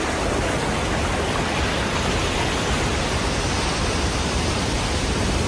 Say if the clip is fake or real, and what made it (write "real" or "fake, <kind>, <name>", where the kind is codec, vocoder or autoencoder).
real